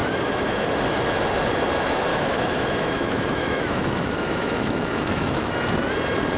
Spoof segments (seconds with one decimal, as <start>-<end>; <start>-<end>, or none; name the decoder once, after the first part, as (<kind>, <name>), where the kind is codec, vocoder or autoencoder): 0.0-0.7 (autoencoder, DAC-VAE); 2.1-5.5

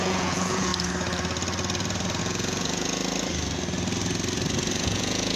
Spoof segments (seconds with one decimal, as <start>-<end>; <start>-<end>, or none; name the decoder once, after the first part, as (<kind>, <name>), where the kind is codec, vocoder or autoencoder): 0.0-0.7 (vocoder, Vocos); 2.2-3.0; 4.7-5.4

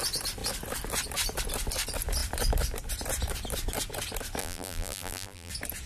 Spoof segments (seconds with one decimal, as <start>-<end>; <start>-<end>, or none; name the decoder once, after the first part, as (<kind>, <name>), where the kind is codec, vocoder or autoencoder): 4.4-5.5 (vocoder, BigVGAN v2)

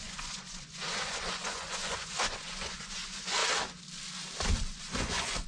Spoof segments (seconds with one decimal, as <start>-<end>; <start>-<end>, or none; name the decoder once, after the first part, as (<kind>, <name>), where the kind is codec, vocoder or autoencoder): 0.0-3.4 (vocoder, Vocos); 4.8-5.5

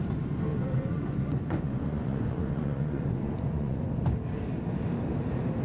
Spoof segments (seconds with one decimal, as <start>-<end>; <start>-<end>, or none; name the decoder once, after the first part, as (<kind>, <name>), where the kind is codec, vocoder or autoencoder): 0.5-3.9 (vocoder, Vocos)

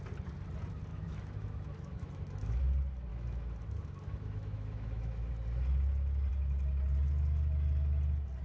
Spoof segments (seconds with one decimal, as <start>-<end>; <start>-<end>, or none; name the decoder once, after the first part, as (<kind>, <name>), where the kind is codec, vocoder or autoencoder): 0.9-2.6 (autoencoder, DAC-VAE); 3.1-5.3

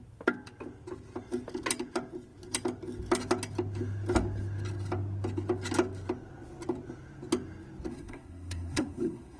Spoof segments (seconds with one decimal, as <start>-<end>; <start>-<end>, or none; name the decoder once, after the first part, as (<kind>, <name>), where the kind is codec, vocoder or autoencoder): 7.9-9.4 (codec, SNAC)